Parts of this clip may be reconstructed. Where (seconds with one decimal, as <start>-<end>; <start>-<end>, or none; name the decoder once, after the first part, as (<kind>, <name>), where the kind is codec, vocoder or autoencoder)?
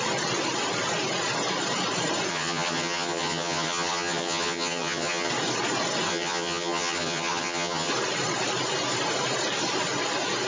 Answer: 2.3-5.3 (vocoder, HiFi-GAN); 6.1-7.9